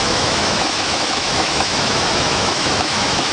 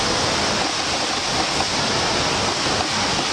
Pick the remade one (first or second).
first